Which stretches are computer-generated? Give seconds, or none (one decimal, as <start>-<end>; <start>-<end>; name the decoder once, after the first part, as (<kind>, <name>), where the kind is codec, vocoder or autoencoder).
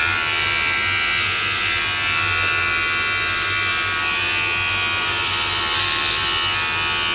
none